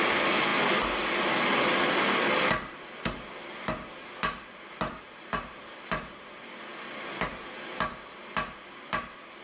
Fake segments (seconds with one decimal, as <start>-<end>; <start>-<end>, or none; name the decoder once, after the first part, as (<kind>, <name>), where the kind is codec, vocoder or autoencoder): none